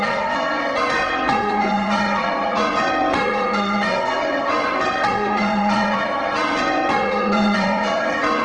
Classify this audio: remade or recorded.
remade